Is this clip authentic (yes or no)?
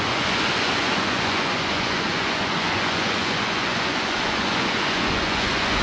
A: no